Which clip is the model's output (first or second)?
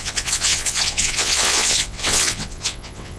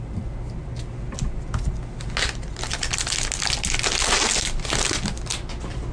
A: first